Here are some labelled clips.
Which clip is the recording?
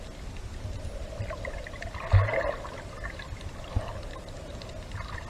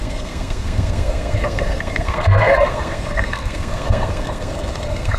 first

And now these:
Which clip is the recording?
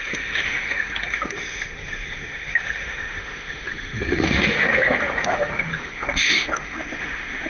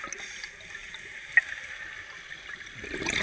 second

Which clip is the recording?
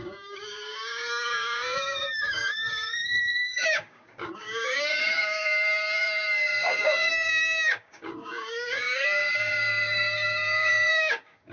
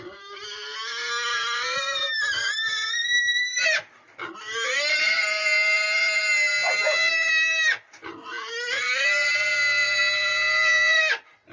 second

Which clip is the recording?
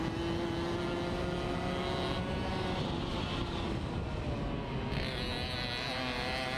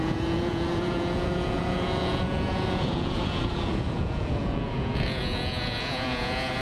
first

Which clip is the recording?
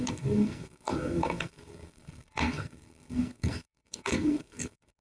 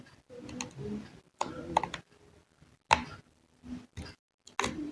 second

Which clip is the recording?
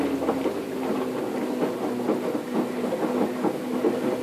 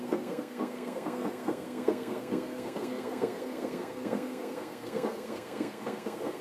first